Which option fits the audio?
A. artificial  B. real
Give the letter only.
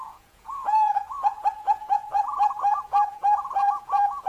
A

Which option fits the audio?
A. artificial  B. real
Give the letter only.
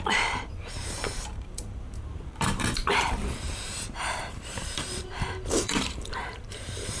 A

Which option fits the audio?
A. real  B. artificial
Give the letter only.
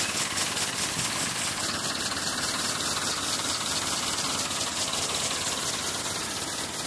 A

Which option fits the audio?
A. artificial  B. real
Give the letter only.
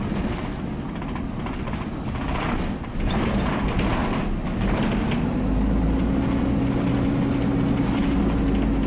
B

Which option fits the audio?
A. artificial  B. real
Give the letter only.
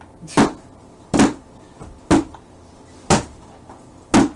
B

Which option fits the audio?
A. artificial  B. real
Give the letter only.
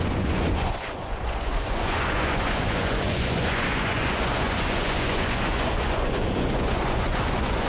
A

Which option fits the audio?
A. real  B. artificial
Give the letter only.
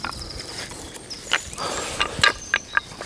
A